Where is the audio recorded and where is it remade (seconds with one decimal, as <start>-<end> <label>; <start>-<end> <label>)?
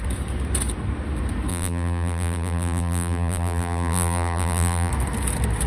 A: 0.0-1.5 recorded; 1.5-4.9 remade; 4.9-5.7 recorded